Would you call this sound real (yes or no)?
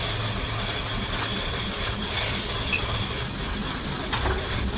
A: yes